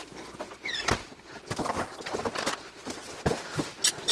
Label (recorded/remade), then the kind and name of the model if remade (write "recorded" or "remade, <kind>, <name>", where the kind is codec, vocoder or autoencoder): recorded